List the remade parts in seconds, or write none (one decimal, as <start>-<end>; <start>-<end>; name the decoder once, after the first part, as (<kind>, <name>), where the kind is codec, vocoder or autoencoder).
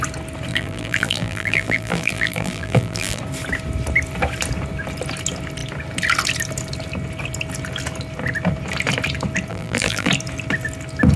0.5-3.2 (vocoder, BigVGAN v2); 9.5-10.1